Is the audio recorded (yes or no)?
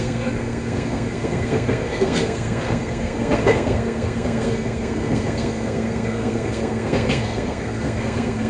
no